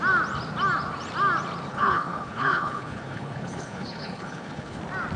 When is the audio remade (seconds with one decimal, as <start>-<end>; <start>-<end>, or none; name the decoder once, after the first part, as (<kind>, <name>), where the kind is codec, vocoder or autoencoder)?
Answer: 1.7-4.8 (codec, HILCodec)